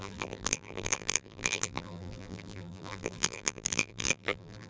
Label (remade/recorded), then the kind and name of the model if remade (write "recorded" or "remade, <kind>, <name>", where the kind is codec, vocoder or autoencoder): remade, vocoder, BigVGAN v2